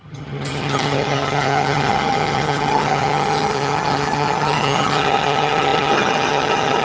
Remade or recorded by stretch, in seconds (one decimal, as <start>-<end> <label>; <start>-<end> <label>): 0.0-6.8 remade

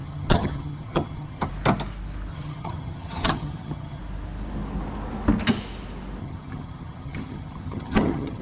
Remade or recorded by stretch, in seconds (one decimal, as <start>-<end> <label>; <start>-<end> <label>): 0.0-1.5 remade; 1.5-2.3 recorded; 2.3-4.0 remade; 4.0-6.2 recorded; 6.2-8.4 remade